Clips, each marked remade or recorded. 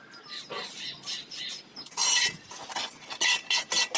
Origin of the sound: recorded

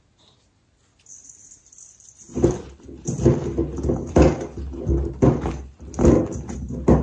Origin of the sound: recorded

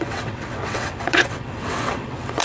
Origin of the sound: remade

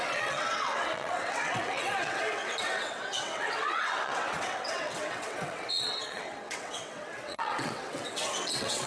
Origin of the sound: remade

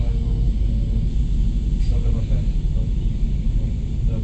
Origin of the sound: recorded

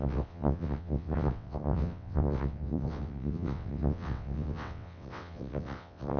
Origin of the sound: remade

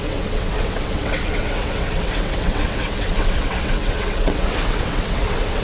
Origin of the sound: remade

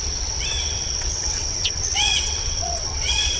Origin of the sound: remade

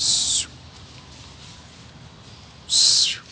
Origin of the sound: recorded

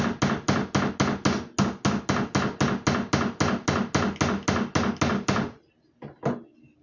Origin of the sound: recorded